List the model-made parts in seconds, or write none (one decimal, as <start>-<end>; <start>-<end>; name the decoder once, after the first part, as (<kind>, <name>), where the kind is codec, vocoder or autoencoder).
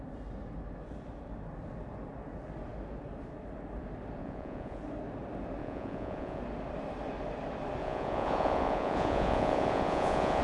4.2-4.8 (vocoder, Vocos); 5.6-6.4; 7.8-10.4